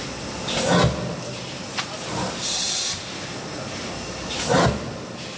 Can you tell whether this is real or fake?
real